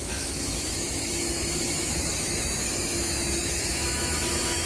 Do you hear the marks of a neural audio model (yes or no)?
yes